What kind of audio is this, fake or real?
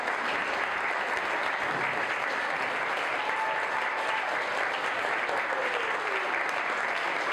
real